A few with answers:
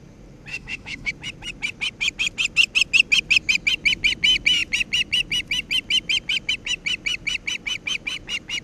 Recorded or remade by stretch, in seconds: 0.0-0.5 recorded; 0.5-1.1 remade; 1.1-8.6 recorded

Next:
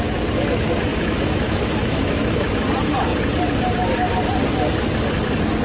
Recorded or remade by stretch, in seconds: 0.0-0.9 recorded; 0.9-2.5 remade; 2.5-5.6 recorded